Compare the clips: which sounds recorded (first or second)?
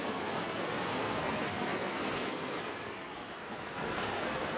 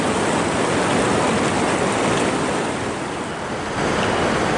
second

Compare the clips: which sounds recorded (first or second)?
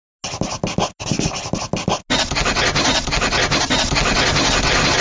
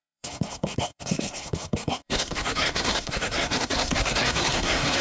first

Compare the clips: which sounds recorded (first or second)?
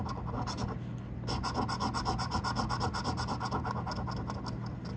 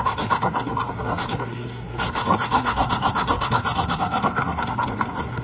first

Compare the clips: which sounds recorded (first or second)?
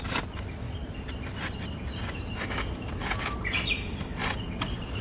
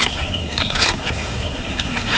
first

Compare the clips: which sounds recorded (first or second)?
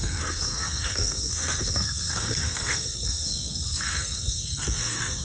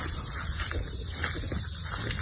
second